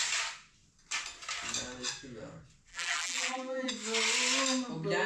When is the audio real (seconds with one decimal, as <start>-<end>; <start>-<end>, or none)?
0.0-2.7; 3.7-5.1